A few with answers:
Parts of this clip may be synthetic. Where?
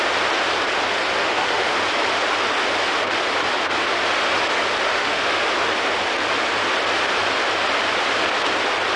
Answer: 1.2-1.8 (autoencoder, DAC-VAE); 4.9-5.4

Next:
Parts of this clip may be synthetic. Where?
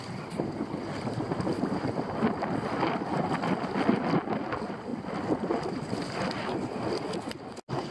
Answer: none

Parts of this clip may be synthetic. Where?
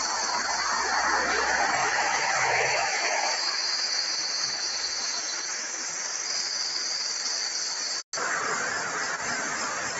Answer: 1.8-5.9 (autoencoder, DAC-VAE)